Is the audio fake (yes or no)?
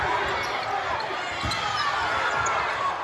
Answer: no